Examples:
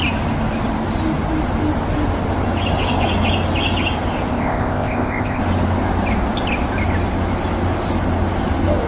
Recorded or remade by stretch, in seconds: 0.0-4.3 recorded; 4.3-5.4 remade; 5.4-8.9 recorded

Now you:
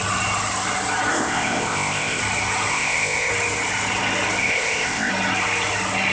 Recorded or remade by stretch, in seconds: 0.0-1.1 recorded; 1.1-2.2 remade; 2.2-2.7 recorded; 2.7-3.3 remade; 3.3-4.4 recorded; 4.4-5.1 remade; 5.1-6.1 recorded

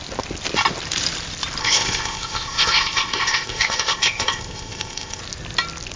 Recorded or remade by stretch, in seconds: 0.0-1.6 recorded; 1.6-5.2 remade; 5.2-6.0 recorded

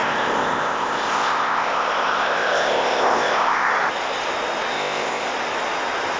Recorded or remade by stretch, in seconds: 0.0-3.7 remade; 3.7-4.7 recorded; 4.7-5.3 remade; 5.3-6.2 recorded

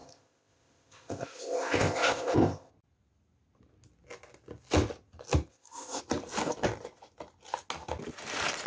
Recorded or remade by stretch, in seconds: 0.0-2.7 remade; 2.7-5.5 recorded; 5.5-6.0 remade; 6.0-8.7 recorded